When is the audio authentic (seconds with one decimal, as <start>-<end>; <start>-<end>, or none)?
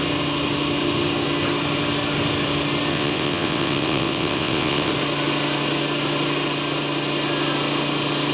0.0-2.9; 4.9-8.3